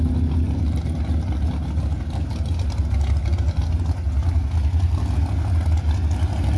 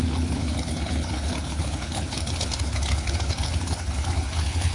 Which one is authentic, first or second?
first